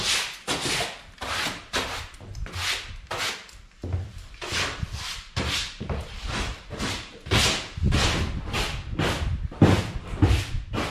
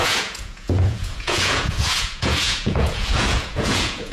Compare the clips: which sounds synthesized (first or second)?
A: second